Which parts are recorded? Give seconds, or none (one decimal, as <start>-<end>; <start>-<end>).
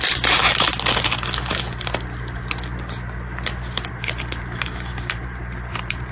0.4-3.9